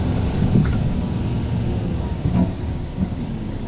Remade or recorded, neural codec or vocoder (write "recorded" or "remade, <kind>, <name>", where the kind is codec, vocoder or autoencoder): remade, codec, DAC